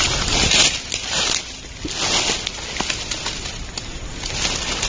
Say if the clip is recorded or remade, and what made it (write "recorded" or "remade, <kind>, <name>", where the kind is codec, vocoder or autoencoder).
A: recorded